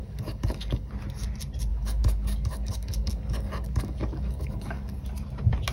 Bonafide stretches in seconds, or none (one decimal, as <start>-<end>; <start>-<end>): 0.9-1.7; 5.1-5.7